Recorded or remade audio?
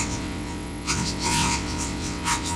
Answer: remade